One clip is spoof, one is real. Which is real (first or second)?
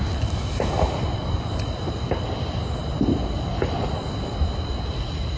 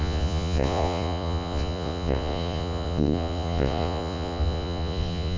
first